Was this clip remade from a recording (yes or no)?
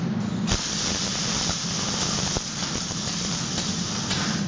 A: no